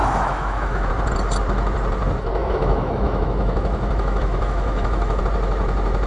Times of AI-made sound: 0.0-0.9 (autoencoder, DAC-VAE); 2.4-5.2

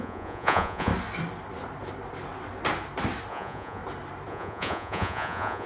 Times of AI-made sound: 0.0-0.9 (vocoder, Vocos); 3.3-3.8; 4.3-5.7

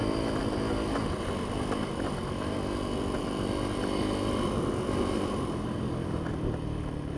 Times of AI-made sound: none

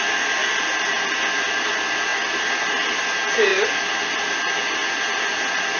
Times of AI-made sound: 0.4-1.1 (vocoder, BigVGAN v2)

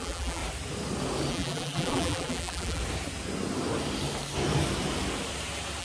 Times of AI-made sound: 0.0-0.4 (vocoder, BigVGAN v2); 1.3-2.8

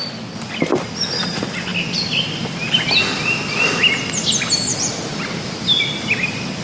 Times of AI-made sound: none

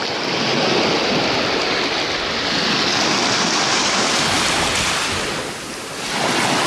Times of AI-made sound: none